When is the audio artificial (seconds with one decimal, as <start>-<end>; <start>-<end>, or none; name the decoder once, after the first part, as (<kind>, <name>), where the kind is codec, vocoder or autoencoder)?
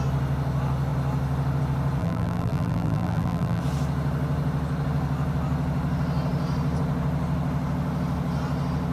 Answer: 2.0-3.6 (vocoder, BigVGAN v2)